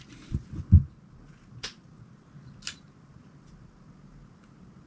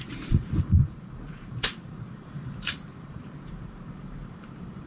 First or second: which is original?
first